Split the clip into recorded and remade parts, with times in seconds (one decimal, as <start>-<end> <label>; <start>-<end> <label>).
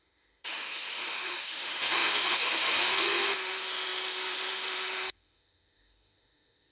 0.0-6.7 remade